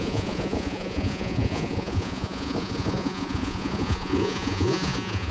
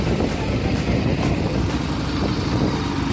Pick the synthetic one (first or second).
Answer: first